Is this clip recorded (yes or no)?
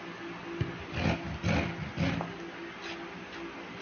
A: yes